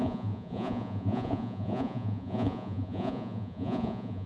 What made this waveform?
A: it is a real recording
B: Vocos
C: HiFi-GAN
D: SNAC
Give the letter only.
B